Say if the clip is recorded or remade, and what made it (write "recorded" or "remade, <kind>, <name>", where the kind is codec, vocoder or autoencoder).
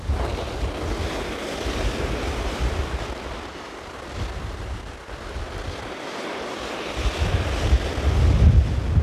recorded